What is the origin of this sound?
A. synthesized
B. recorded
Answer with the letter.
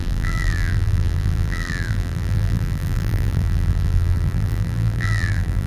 A